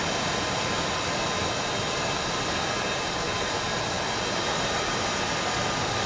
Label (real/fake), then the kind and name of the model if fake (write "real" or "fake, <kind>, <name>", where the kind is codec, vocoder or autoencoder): real